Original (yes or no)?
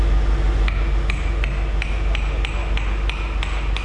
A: yes